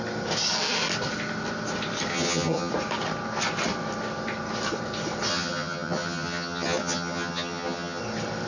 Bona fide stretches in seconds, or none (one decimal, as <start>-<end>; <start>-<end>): 0.0-2.1; 2.7-5.3; 8.0-8.5